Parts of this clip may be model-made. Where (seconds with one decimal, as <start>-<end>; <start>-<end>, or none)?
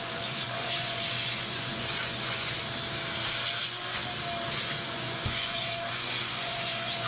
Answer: 0.0-2.6; 3.6-4.0; 4.6-7.1